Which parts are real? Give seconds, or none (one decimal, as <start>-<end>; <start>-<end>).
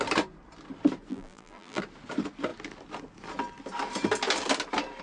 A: 0.0-1.1; 1.8-5.0